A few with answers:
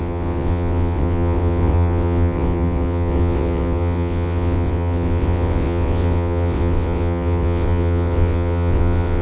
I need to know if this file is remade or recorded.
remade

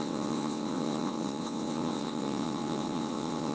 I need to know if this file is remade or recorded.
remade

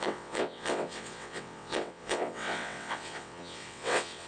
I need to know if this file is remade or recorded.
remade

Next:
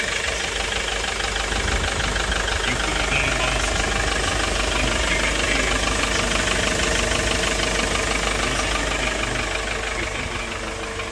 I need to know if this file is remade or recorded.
recorded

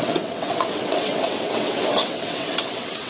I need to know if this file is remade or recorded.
remade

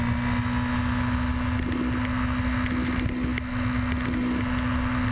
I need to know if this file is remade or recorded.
recorded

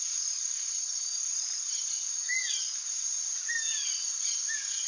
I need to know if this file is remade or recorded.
recorded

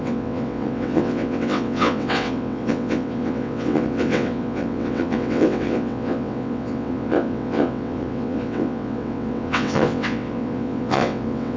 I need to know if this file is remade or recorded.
remade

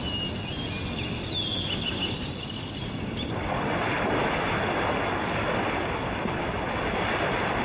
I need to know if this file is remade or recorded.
recorded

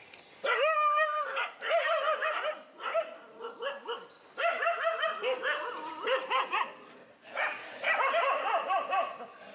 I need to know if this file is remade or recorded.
recorded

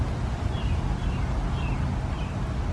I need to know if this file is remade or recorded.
recorded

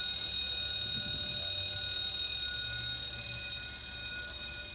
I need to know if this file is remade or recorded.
recorded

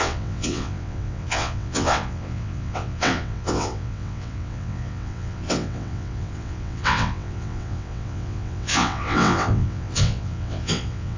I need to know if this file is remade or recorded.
remade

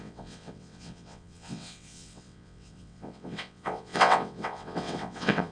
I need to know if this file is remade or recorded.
remade